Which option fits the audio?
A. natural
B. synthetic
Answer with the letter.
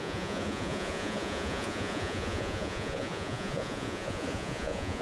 B